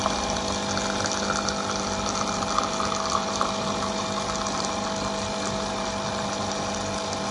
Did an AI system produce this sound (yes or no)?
no